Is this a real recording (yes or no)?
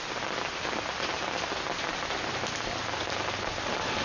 yes